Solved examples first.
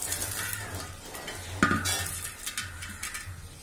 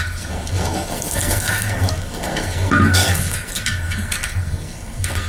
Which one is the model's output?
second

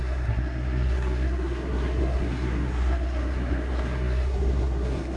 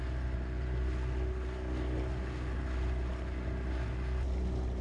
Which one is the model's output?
first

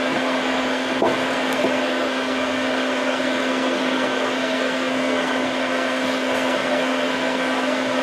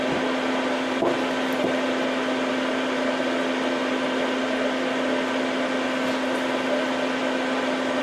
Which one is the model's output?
first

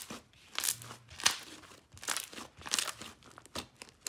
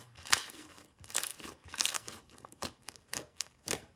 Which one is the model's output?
second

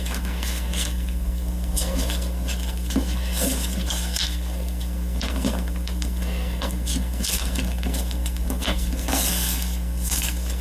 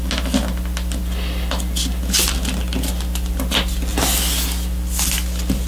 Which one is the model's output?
first